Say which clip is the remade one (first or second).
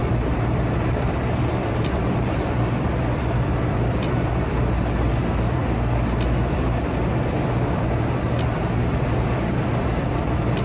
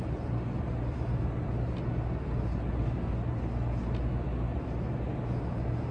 first